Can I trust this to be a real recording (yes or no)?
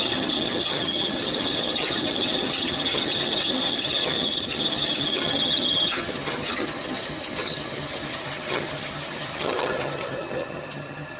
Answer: no